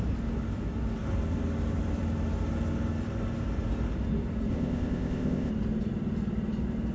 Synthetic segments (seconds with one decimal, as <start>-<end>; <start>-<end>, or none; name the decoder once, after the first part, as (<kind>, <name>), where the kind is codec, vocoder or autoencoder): 4.5-5.5 (codec, ZipCodec)